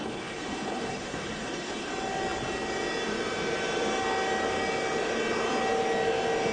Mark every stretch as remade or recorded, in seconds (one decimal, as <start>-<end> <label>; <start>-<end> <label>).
0.0-1.9 remade; 1.9-6.5 recorded